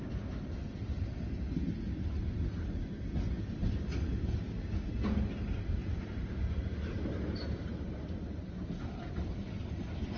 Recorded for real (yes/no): yes